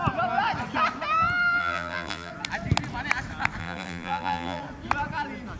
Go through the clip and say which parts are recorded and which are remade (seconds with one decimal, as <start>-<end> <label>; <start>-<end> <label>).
0.0-1.6 recorded; 1.6-2.3 remade; 2.3-3.6 recorded; 3.6-4.6 remade; 4.6-5.6 recorded